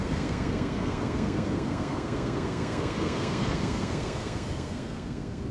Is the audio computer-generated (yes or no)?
yes